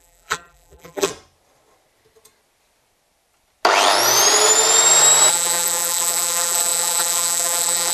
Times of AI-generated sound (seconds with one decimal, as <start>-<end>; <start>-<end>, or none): 0.0-1.1; 5.3-7.9